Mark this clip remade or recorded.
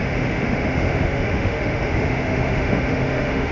remade